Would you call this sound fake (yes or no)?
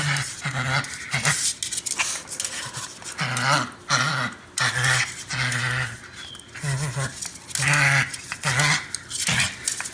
no